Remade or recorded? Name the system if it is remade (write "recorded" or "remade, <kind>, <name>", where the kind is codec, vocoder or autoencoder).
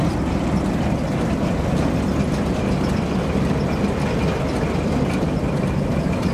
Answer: recorded